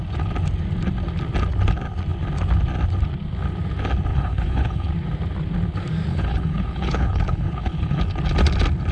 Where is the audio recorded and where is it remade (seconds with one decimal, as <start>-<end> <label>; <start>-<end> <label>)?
0.0-4.1 recorded; 4.1-4.9 remade; 4.9-6.1 recorded; 6.1-8.0 remade; 8.0-8.9 recorded